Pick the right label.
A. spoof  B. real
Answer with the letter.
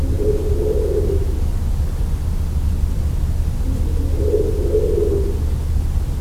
B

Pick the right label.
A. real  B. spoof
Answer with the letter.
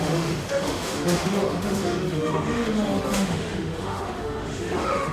B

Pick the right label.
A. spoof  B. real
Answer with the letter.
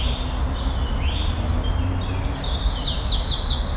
B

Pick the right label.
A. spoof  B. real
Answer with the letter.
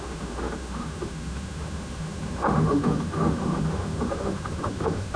A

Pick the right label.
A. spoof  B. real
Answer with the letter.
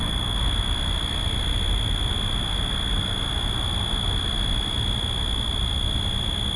B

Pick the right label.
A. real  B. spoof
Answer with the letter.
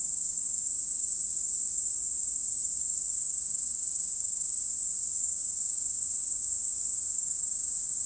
B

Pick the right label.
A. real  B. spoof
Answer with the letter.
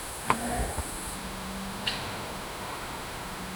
B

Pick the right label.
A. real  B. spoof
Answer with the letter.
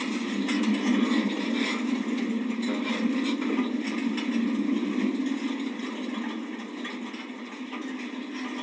A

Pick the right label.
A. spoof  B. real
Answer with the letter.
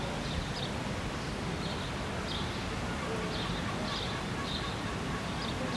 B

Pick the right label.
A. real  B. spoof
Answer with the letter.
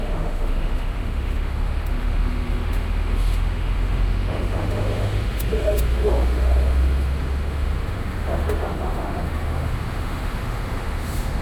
B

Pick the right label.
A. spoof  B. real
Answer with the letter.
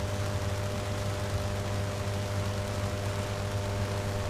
B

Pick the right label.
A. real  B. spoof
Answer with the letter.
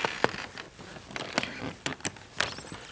A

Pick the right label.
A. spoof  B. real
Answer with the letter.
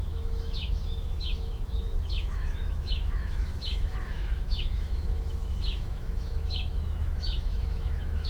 A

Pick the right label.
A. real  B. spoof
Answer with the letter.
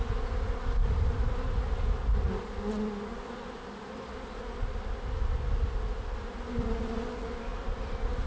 A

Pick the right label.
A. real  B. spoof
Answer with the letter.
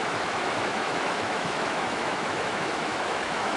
B